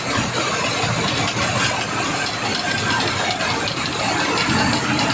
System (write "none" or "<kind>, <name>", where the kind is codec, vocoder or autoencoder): none